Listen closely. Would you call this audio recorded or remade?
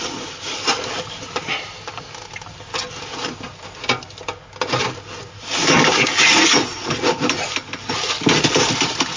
recorded